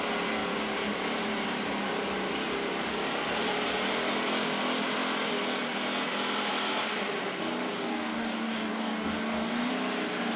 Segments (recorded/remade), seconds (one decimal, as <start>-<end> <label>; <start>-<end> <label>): 0.0-7.7 recorded; 7.7-9.7 remade; 9.7-10.4 recorded